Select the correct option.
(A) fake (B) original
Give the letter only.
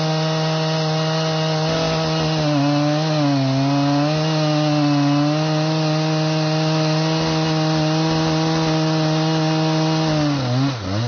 B